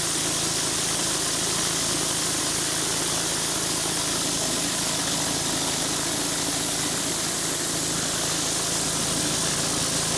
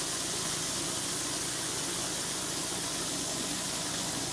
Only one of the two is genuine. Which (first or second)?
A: first